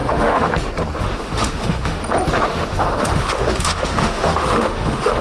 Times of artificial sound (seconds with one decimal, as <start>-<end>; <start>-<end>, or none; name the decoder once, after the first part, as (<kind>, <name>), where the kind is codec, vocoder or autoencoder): 0.0-0.5 (autoencoder, DAC-VAE); 1.0-2.0; 2.5-5.2